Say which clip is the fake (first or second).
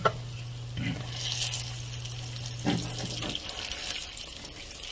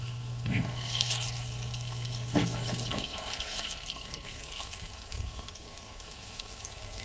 second